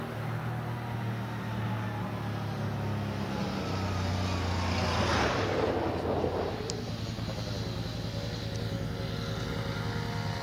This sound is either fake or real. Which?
real